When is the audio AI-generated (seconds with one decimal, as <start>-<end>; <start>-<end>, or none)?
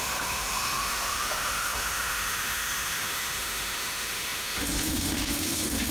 0.0-5.9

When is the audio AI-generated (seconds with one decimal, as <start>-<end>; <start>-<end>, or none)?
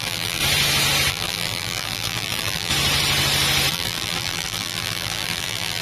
0.0-0.4; 1.1-2.7; 3.7-5.8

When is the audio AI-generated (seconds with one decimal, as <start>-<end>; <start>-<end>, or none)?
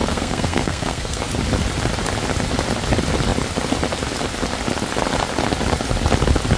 0.0-1.2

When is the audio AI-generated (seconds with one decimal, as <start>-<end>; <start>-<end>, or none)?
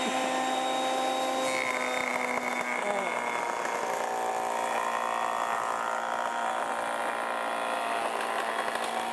none